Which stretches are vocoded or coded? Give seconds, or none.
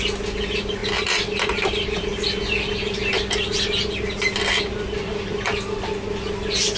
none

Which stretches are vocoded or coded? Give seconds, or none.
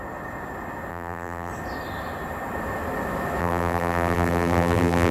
0.9-1.5 (vocoder, BigVGAN v2); 3.4-5.1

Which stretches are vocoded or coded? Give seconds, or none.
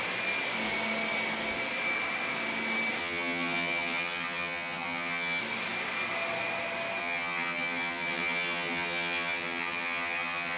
3.0-5.4 (vocoder, HiFi-GAN); 7.0-10.6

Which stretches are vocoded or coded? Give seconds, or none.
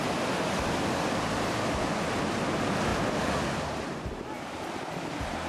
none